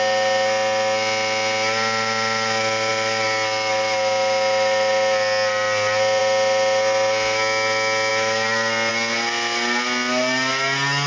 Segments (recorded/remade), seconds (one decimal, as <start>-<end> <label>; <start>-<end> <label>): 0.0-11.1 recorded